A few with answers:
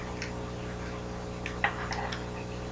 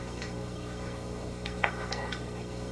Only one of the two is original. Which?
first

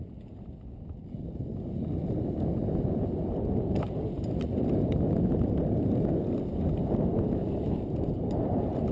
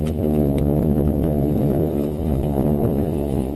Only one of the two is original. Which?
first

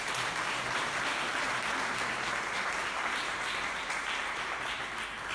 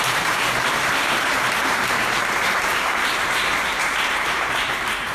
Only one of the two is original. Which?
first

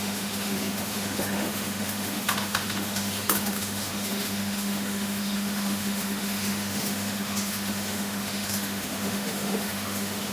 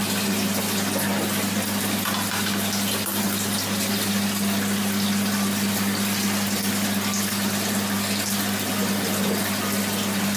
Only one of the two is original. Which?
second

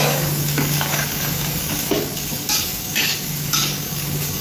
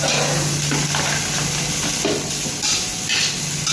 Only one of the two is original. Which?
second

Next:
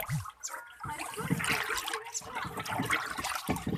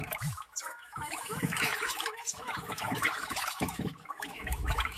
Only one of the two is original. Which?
first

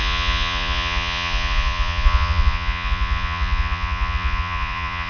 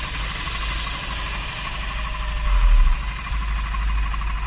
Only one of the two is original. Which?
second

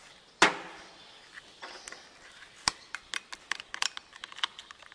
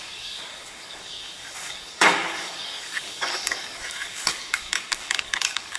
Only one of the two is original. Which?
first